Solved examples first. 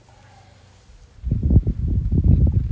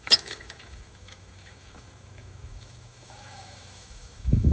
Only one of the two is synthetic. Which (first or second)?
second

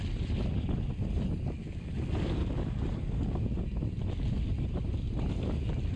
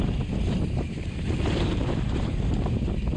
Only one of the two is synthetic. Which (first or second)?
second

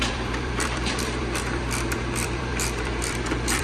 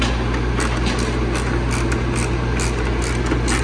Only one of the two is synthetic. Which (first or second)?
first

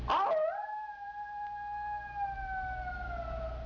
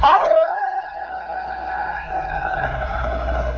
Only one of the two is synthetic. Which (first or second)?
second